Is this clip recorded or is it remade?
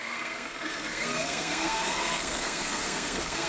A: remade